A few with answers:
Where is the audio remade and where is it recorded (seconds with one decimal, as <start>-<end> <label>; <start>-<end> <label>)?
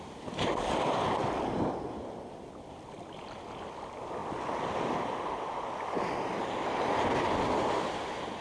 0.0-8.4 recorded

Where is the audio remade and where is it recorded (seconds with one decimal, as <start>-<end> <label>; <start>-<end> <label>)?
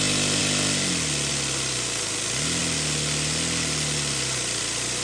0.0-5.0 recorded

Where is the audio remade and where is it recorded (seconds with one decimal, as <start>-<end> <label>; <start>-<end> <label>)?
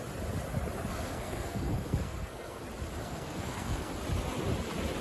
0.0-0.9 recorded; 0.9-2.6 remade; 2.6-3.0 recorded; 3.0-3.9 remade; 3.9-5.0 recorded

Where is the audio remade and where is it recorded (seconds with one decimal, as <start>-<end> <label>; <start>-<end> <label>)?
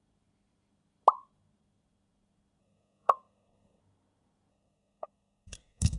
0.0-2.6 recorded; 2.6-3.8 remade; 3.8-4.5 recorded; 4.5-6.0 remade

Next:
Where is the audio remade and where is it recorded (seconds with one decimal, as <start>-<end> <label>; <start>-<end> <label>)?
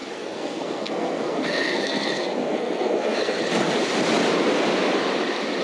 0.0-3.4 remade; 3.4-5.6 recorded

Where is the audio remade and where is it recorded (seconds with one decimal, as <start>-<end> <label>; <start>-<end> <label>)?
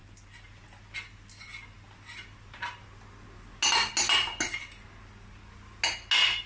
0.0-6.5 recorded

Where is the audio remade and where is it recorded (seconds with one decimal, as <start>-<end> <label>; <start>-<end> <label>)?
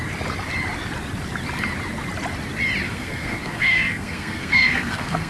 0.0-2.9 recorded; 2.9-5.3 remade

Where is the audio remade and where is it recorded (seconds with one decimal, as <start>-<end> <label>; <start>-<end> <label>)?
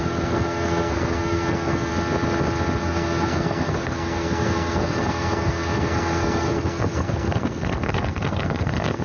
0.0-1.9 remade; 1.9-2.8 recorded; 2.8-9.0 remade